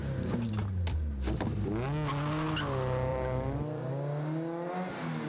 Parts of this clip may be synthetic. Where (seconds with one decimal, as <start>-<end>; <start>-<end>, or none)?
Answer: 3.1-3.9